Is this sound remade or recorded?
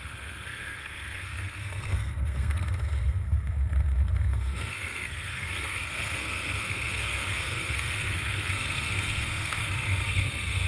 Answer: remade